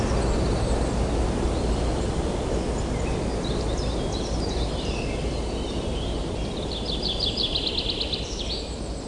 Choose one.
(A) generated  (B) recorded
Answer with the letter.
B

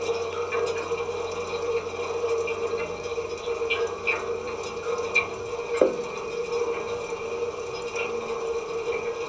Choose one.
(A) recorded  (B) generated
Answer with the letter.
A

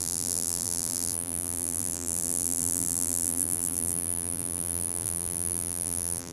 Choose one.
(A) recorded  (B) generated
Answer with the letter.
B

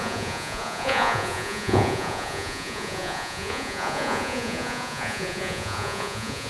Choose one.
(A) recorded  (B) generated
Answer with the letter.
B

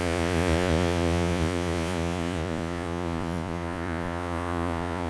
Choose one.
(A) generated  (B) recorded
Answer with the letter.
A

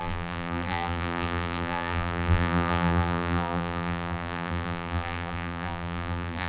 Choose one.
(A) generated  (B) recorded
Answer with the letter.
A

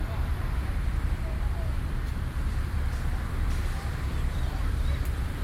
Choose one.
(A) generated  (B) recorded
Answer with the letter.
A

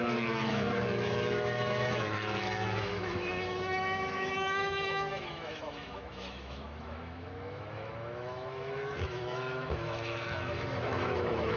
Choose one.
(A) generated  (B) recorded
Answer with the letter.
A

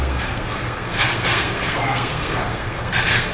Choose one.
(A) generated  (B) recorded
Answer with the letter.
A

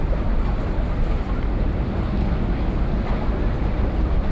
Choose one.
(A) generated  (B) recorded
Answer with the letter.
B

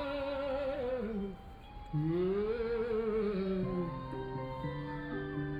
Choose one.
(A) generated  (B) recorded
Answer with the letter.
B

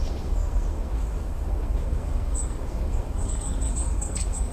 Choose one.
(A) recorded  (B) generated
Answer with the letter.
B